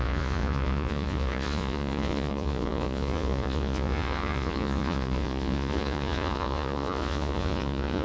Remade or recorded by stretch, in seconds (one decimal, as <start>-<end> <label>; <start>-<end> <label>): 0.0-8.0 remade